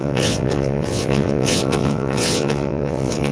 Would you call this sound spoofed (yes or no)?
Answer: yes